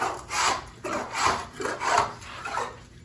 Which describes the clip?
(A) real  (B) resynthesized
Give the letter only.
A